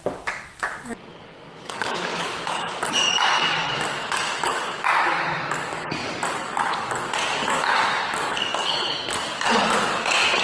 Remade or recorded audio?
remade